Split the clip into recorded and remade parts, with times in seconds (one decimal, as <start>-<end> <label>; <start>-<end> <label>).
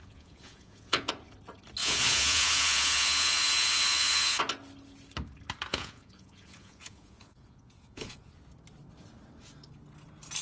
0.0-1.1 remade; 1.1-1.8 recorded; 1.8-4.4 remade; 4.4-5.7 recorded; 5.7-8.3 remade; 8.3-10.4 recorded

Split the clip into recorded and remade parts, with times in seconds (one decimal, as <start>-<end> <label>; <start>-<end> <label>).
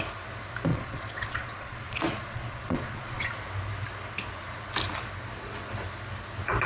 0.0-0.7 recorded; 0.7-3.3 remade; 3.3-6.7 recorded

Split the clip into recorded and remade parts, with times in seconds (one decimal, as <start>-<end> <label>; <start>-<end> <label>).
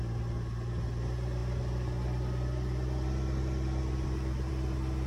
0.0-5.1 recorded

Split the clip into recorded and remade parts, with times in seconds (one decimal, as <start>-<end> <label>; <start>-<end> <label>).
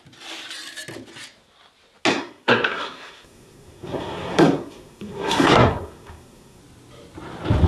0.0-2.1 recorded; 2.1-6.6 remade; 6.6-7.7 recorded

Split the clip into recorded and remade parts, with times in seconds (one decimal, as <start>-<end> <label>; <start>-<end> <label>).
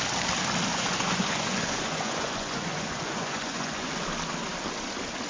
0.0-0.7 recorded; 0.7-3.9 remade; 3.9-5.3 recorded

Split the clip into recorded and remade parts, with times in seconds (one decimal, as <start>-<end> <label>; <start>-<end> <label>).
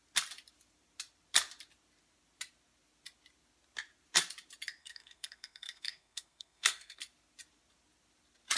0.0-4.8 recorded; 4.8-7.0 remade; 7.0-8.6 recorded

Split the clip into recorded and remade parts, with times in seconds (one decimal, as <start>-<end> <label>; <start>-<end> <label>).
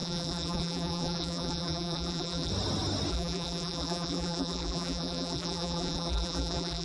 0.0-2.5 remade; 2.5-3.1 recorded; 3.1-6.8 remade